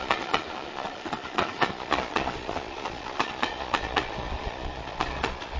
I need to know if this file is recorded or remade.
remade